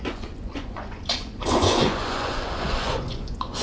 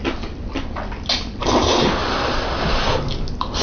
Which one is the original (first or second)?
second